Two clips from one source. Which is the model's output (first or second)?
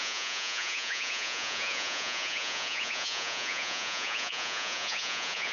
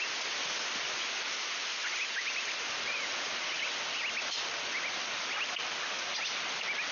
first